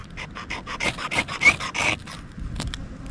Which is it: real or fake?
real